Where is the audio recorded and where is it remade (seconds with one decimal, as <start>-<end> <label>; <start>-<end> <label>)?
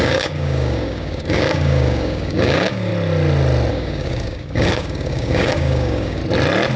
0.0-2.9 remade; 2.9-3.7 recorded; 3.7-6.2 remade; 6.2-6.8 recorded